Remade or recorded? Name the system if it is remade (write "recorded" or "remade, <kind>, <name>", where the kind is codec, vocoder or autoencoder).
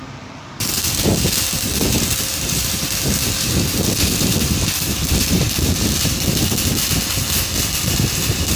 remade, vocoder, BigVGAN v2